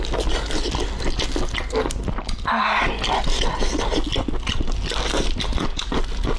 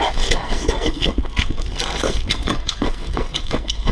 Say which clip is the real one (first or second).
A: first